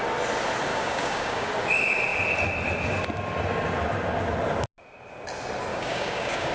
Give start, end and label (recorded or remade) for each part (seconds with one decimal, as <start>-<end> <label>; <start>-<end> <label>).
0.0-0.7 recorded; 0.7-1.5 remade; 1.5-5.7 recorded; 5.7-6.5 remade

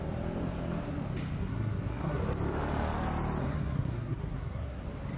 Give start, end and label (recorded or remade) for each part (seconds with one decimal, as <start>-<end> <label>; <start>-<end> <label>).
0.0-1.4 recorded; 1.4-2.2 remade; 2.2-3.4 recorded; 3.4-4.8 remade; 4.8-5.2 recorded

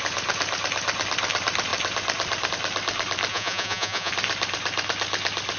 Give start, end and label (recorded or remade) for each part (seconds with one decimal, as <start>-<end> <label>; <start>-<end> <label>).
0.0-3.3 recorded; 3.3-4.1 remade; 4.1-5.6 recorded

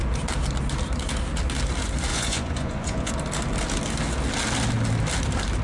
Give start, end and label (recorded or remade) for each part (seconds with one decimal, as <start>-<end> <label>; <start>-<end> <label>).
0.0-2.1 recorded; 2.1-3.1 remade; 3.1-5.6 recorded

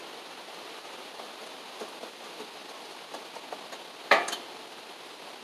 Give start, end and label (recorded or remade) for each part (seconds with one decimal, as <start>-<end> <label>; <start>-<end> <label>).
0.0-5.4 recorded

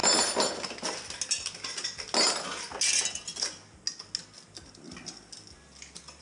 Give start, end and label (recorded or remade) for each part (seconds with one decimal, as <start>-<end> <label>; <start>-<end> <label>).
0.0-6.2 recorded